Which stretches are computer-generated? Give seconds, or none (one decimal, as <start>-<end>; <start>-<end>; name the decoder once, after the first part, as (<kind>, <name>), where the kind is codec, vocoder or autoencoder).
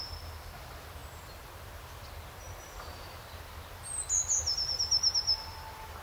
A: none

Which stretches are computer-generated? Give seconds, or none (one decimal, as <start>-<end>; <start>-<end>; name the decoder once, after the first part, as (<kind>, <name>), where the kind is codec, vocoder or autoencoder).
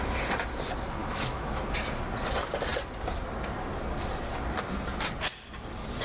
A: 1.0-1.6 (autoencoder, DAC-VAE)